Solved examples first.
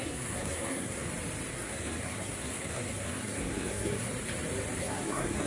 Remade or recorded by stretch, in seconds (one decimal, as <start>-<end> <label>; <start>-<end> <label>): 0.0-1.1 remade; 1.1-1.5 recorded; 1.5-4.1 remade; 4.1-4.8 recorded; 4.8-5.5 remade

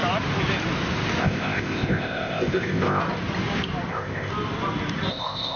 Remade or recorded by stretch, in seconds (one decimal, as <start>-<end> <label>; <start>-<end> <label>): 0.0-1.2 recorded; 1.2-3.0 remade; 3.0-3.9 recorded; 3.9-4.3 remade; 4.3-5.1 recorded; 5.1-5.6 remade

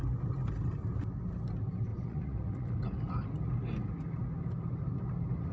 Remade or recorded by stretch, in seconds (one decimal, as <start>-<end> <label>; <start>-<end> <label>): 0.0-1.9 recorded; 1.9-2.8 remade; 2.8-5.5 recorded